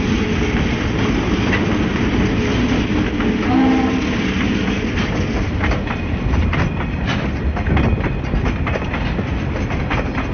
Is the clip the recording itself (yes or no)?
yes